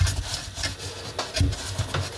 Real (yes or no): yes